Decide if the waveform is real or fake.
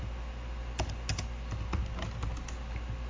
real